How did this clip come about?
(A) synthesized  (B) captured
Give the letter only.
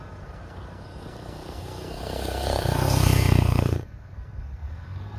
A